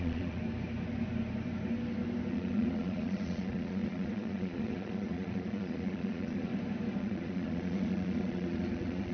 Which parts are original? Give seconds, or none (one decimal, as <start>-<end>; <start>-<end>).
0.4-2.3; 6.5-7.0